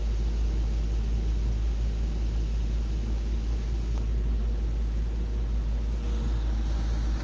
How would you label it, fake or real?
real